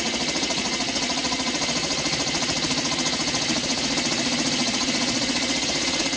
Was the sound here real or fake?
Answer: fake